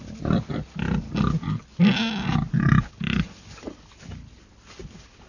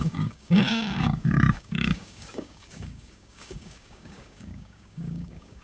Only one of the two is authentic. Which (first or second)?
first